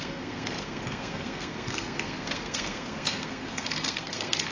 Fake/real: fake